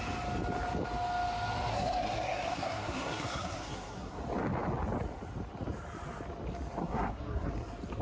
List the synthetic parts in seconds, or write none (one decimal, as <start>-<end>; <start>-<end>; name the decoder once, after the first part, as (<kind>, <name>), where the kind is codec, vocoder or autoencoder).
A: 1.7-4.2 (codec, SNAC); 6.8-7.5